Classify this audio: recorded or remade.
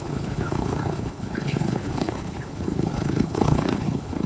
remade